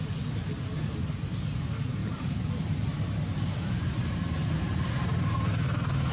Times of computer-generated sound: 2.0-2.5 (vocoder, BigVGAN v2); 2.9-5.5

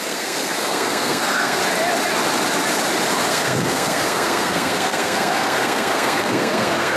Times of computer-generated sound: 0.0-1.6 (codec, SNAC); 3.3-7.0

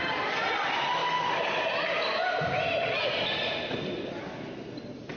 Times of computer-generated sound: none

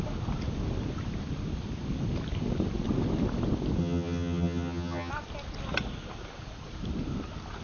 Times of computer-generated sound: 3.8-5.1 (vocoder, HiFi-GAN)